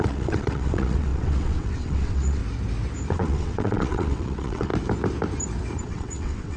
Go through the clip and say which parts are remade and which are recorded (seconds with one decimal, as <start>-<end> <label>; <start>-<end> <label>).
0.0-2.4 remade; 2.4-3.1 recorded; 3.1-4.7 remade; 4.7-5.8 recorded; 5.8-6.6 remade